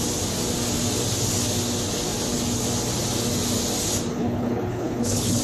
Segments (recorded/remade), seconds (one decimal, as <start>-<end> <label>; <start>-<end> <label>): 0.0-4.1 recorded; 4.1-5.4 remade